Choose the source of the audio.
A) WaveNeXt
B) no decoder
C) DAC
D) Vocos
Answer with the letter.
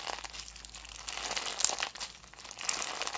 B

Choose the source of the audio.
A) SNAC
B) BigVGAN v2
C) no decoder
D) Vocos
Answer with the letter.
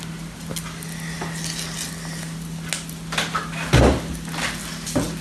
C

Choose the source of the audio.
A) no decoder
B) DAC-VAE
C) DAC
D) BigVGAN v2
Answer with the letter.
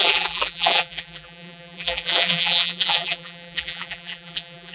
D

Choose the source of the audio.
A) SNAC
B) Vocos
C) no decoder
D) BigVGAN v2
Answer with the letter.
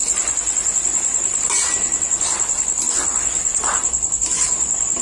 C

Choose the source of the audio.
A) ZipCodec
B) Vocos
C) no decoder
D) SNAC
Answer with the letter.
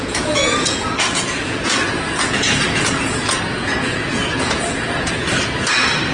B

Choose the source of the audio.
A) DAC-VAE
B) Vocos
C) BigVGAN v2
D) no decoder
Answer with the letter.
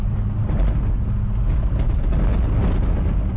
D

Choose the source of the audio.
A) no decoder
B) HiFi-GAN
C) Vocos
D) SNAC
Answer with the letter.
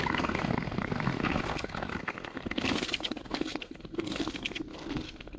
D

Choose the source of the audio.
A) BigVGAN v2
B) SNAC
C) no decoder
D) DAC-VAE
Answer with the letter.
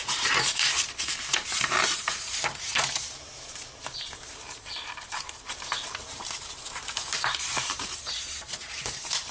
A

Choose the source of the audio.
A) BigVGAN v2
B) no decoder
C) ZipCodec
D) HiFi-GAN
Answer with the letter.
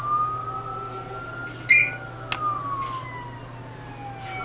B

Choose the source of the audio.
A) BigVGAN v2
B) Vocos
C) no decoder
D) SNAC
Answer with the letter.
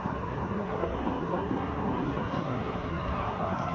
D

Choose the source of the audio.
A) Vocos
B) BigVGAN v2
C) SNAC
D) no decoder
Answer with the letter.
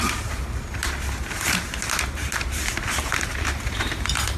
D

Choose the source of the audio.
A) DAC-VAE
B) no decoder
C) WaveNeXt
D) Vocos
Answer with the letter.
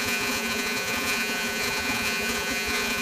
D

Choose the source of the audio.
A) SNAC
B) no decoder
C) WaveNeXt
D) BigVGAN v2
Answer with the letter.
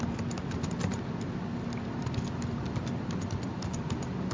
B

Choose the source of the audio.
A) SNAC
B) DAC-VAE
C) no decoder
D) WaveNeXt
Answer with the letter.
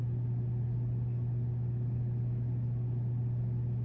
C